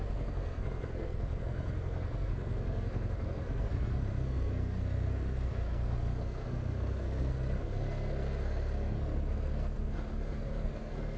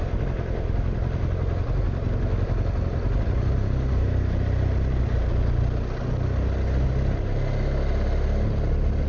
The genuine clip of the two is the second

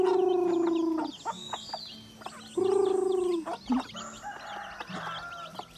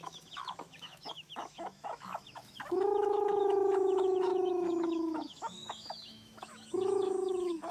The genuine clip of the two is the first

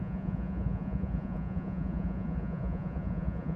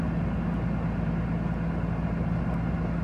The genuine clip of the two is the second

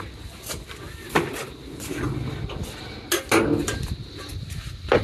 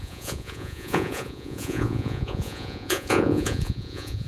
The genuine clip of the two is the first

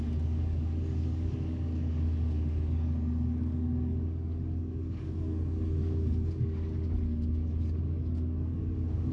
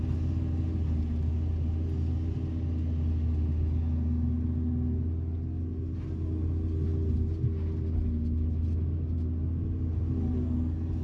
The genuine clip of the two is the second